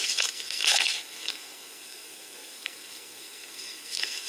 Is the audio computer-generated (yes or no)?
yes